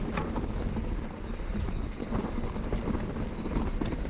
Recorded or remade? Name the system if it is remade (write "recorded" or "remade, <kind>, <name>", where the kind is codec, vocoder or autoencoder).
recorded